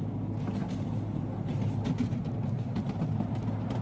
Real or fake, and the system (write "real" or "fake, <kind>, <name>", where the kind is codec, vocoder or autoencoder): real